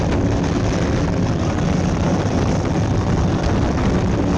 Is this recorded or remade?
recorded